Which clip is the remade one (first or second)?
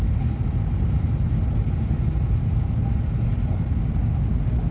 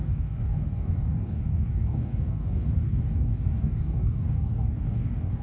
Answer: second